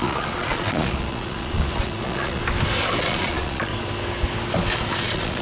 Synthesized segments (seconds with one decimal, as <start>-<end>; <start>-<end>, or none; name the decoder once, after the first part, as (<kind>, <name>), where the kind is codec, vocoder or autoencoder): 0.0-2.4 (vocoder, Vocos); 3.0-3.7; 4.9-5.4